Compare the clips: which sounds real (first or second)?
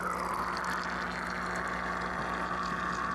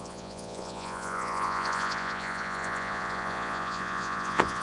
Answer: first